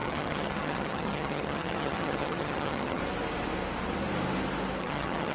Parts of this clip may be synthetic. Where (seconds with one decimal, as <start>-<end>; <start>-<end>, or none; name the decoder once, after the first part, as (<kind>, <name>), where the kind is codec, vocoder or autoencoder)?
0.0-3.0 (vocoder, HiFi-GAN); 4.8-5.3